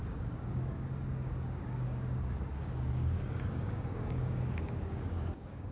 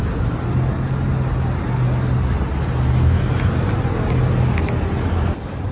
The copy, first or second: first